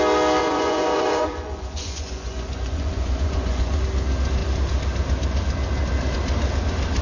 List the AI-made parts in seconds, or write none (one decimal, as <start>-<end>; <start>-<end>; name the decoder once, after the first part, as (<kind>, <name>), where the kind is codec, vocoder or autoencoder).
0.4-3.8 (vocoder, Vocos)